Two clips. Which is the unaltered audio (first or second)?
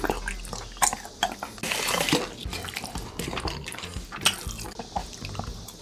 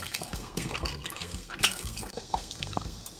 first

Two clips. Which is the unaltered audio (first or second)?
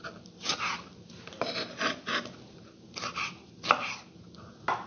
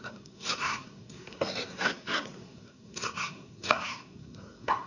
first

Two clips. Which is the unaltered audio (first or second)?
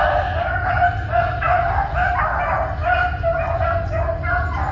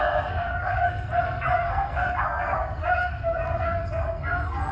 first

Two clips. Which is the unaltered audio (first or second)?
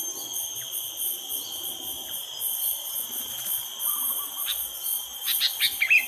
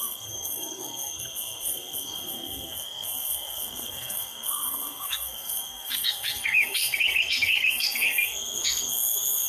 first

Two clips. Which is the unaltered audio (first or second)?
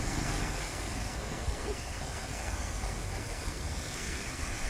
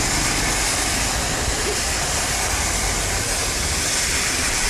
second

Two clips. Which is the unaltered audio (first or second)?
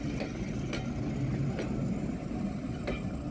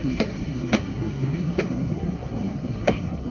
first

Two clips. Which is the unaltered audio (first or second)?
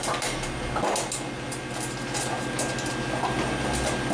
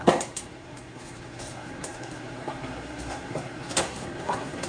first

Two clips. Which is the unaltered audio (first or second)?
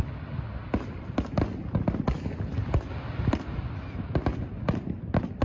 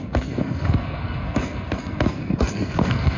first